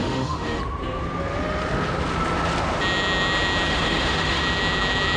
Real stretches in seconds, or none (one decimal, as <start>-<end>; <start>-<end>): 0.6-3.7; 4.4-5.2